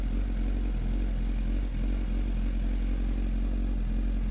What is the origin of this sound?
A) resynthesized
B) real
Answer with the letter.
B